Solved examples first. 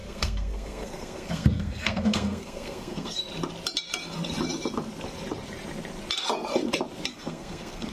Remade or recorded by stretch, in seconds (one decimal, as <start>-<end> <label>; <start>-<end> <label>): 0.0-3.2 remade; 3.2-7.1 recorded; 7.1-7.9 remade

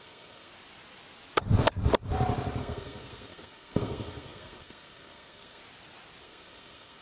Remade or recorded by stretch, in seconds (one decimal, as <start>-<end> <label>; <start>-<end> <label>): 0.0-0.5 remade; 0.5-2.6 recorded; 2.6-5.6 remade; 5.6-6.2 recorded; 6.2-7.0 remade

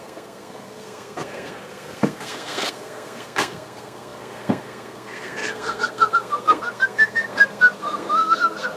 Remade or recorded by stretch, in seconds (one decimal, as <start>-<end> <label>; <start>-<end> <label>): 0.0-8.8 remade

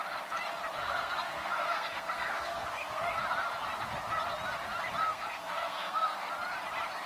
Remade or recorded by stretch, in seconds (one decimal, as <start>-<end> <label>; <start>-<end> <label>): 0.0-0.8 recorded; 0.8-3.2 remade; 3.2-5.0 recorded; 5.0-6.3 remade; 6.3-7.1 recorded

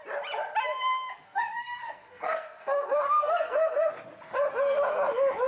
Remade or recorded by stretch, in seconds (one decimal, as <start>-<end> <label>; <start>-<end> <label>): 0.0-1.1 recorded; 1.1-3.9 remade; 3.9-5.5 recorded